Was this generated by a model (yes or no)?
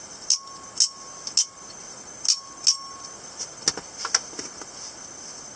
no